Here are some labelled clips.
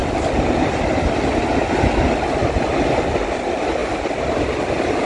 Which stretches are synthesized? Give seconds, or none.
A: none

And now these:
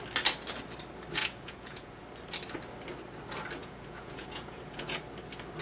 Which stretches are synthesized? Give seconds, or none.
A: 1.2-2.0 (vocoder, Vocos); 3.6-5.0

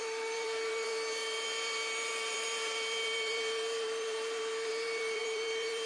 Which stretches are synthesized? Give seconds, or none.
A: 0.0-5.9 (vocoder, BigVGAN v2)

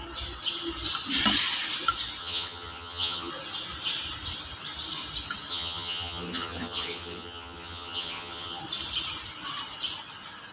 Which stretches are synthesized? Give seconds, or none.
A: 2.2-3.3 (vocoder, HiFi-GAN); 5.5-8.6